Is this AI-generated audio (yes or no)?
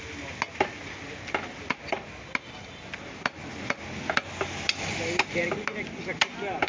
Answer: no